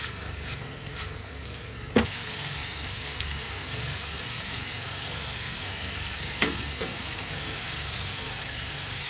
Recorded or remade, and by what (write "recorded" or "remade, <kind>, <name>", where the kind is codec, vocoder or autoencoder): remade, codec, SNAC